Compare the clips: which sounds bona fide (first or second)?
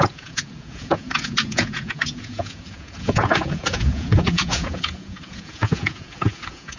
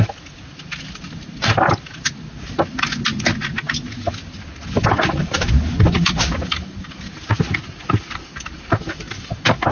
second